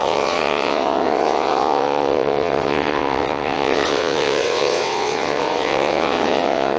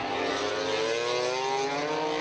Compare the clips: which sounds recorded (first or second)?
second